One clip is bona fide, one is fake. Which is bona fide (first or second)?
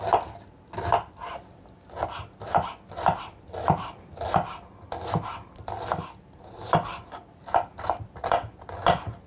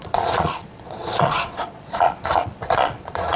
first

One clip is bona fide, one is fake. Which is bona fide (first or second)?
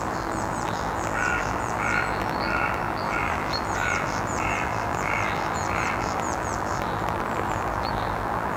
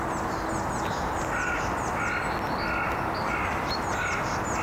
second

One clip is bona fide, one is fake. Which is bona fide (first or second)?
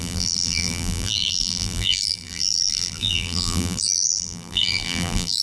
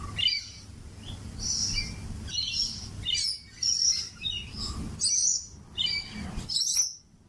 second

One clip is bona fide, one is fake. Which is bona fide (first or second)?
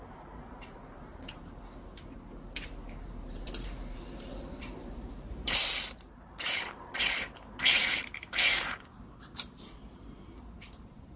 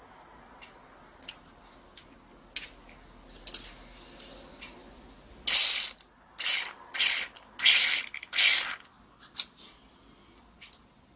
second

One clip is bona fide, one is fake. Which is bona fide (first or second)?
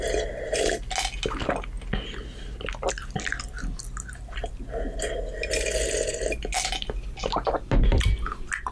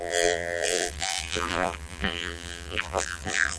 first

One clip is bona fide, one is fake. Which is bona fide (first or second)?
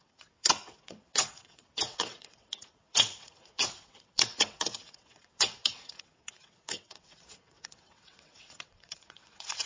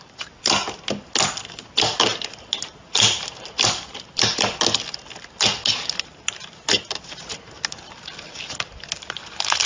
second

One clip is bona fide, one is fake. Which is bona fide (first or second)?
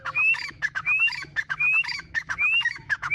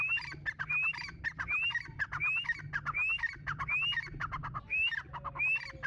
second